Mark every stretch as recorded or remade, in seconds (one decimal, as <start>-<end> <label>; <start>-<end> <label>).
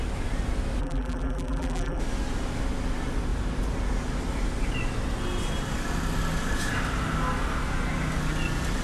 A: 0.0-0.8 recorded; 0.8-2.0 remade; 2.0-8.8 recorded